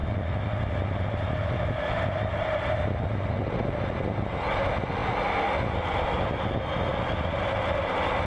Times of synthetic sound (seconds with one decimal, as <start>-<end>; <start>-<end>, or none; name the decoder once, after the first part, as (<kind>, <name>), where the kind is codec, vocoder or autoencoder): none